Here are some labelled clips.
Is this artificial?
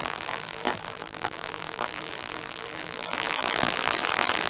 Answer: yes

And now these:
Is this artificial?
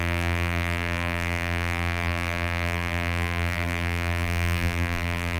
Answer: yes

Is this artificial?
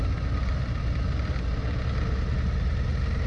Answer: no